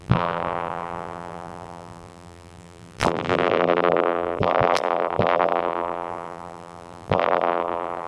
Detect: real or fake fake